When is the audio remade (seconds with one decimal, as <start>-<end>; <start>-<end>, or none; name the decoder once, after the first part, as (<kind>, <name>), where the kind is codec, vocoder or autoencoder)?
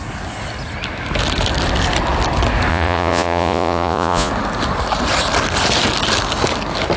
2.7-4.3 (vocoder, Vocos)